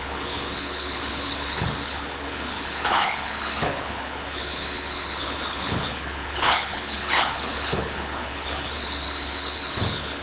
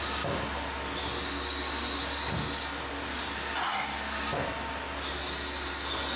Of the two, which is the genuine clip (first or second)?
second